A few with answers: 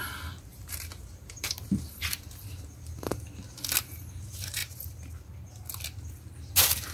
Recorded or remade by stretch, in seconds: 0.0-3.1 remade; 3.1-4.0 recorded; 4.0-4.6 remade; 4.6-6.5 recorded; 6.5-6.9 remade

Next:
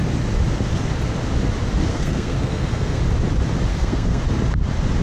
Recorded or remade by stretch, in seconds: 0.0-1.9 recorded; 1.9-3.0 remade; 3.0-3.7 recorded; 3.7-4.2 remade; 4.2-5.0 recorded

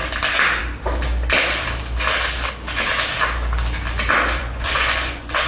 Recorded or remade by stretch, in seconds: 0.0-4.4 recorded; 4.4-5.5 remade

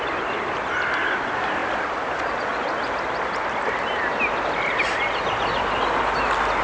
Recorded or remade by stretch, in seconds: 0.0-6.6 recorded